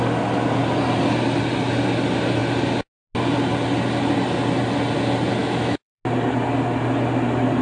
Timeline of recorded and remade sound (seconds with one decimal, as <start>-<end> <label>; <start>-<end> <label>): 0.0-5.4 recorded; 5.4-6.0 remade; 6.0-7.6 recorded